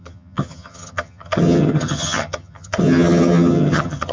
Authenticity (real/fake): fake